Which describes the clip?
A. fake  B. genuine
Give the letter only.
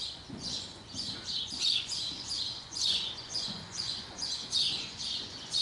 A